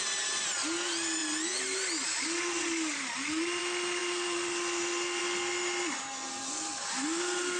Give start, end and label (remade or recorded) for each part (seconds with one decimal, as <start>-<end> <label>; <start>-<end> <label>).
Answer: 0.0-7.6 recorded